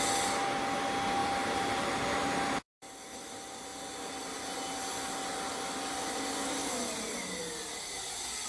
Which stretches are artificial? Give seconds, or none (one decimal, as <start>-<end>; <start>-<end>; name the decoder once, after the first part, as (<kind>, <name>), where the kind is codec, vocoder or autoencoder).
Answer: 1.2-3.0 (vocoder, BigVGAN v2); 6.6-7.2